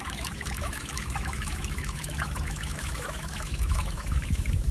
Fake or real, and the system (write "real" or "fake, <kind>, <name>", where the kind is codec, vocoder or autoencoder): fake, autoencoder, DAC-VAE